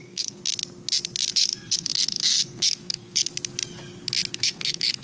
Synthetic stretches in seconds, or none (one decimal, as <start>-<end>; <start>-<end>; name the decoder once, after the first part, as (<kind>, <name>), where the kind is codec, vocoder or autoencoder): 0.0-0.4 (codec, SNAC); 1.3-3.3; 4.3-5.0